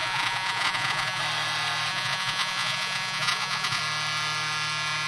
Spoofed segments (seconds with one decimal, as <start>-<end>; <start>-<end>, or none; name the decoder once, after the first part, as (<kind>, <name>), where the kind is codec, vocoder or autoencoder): 0.0-1.2 (vocoder, Vocos); 1.9-3.8